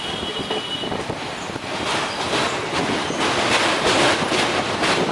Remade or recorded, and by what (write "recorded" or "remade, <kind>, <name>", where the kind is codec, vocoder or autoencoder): recorded